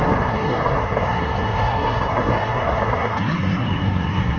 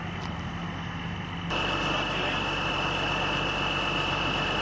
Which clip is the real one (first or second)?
second